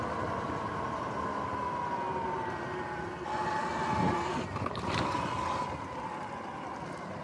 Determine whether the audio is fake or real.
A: real